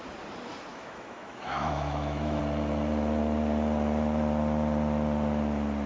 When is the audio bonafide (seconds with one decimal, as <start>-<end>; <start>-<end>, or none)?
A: 0.0-0.7; 2.4-5.9